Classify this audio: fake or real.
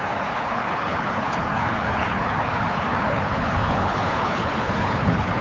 fake